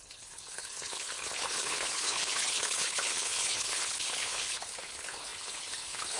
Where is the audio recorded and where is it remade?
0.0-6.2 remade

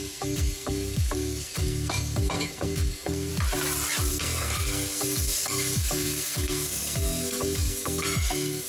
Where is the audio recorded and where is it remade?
0.0-3.3 remade; 3.3-4.1 recorded; 4.1-8.7 remade

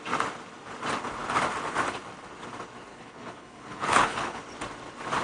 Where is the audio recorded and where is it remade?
0.0-2.9 recorded; 2.9-4.4 remade; 4.4-5.2 recorded

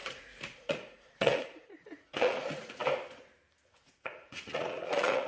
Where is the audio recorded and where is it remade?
0.0-2.8 remade; 2.8-3.7 recorded; 3.7-5.3 remade

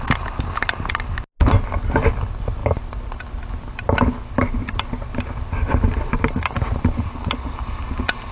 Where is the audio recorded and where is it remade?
0.0-4.6 recorded; 4.6-6.8 remade; 6.8-8.3 recorded

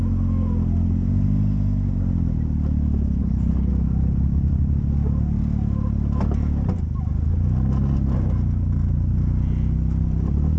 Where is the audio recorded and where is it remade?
0.0-3.2 recorded; 3.2-3.7 remade; 3.7-10.6 recorded

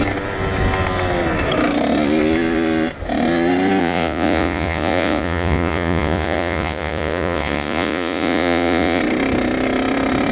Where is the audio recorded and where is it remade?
0.0-3.8 recorded; 3.8-9.0 remade; 9.0-10.3 recorded